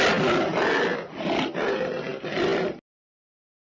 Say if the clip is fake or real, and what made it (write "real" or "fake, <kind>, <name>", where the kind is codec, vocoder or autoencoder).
real